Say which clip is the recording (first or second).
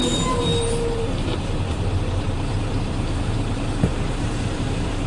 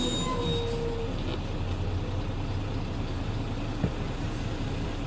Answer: second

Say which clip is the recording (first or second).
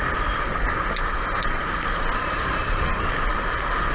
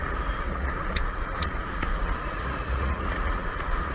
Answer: first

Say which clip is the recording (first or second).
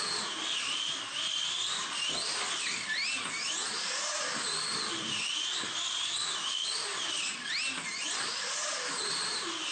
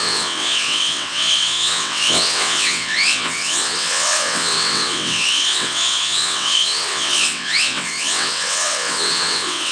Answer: first